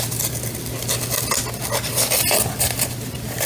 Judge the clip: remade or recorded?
recorded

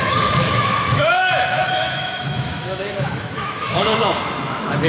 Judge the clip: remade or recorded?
remade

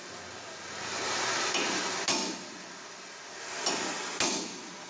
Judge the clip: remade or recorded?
recorded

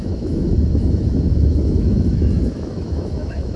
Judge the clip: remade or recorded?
remade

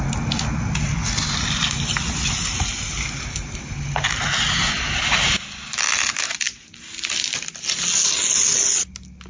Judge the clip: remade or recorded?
recorded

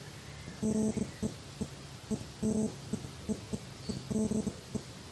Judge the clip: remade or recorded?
recorded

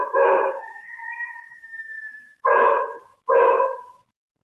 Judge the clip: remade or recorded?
remade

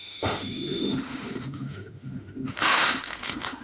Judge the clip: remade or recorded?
remade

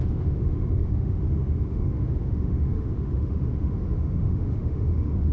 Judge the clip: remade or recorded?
remade